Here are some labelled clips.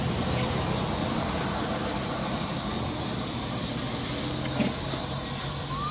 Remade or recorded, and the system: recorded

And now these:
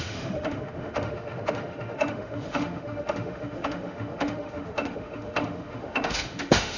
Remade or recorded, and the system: remade, autoencoder, DAC-VAE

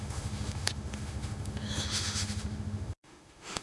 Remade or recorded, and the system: remade, autoencoder, DAC-VAE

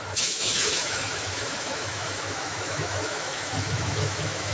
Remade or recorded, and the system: remade, autoencoder, DAC-VAE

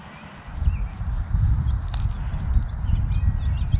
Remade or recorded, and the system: recorded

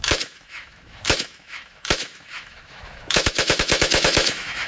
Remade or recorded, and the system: remade, autoencoder, DAC-VAE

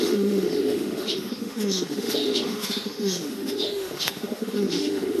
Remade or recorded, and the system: remade, autoencoder, DAC-VAE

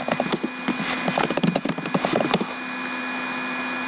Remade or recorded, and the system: recorded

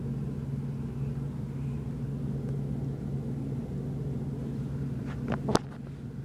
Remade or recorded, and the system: recorded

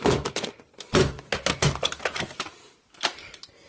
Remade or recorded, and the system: recorded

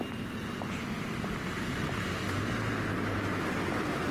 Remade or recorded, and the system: recorded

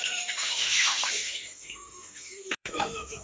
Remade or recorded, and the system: remade, autoencoder, DAC-VAE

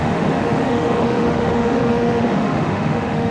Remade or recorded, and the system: remade, autoencoder, DAC-VAE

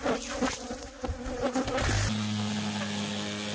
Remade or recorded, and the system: recorded